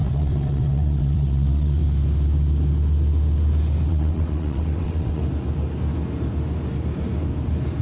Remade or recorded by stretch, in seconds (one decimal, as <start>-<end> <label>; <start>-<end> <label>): 0.0-1.8 remade; 1.8-3.9 recorded; 3.9-5.2 remade; 5.2-7.8 recorded